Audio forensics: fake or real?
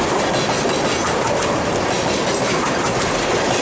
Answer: real